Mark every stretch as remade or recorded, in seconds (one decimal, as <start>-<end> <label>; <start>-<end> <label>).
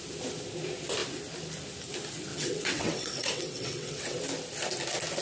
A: 0.0-2.3 recorded; 2.3-4.2 remade; 4.2-5.2 recorded